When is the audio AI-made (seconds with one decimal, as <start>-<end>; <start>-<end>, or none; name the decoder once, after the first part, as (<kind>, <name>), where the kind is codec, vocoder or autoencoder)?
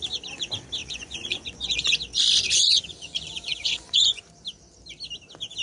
0.8-4.2 (vocoder, Vocos)